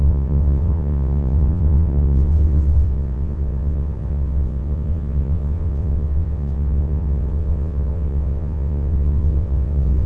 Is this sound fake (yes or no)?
yes